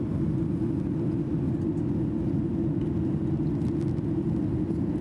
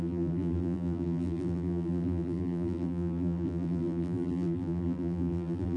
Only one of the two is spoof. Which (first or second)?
second